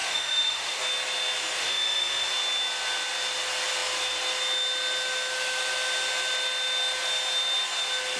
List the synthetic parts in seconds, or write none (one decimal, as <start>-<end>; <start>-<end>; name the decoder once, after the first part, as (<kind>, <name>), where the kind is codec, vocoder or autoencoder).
0.0-0.8 (autoencoder, DAC-VAE); 1.6-2.3